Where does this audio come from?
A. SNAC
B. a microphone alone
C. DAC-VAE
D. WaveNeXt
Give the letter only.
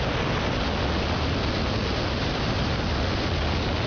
B